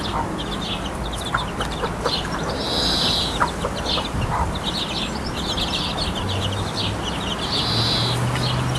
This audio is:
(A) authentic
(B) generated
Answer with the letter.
A